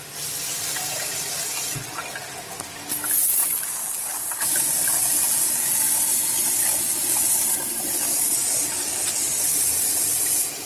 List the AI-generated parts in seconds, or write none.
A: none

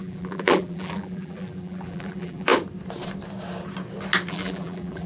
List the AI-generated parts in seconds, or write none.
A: 0.0-2.5 (vocoder, BigVGAN v2); 4.3-5.1

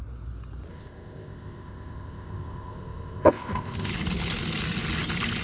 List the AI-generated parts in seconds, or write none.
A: 0.7-3.9 (codec, ZipCodec)

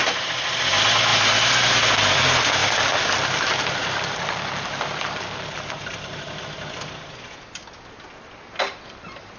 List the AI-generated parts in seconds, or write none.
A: 2.6-6.4 (vocoder, BigVGAN v2)

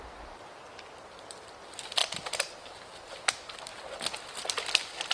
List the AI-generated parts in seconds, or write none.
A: none

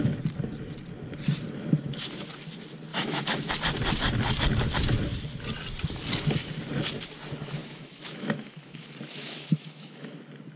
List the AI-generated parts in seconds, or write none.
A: 2.9-3.5 (autoencoder, DAC-VAE); 7.6-10.2

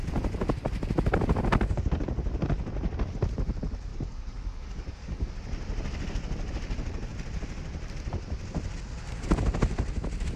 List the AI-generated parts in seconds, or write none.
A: 3.9-5.3 (codec, DAC)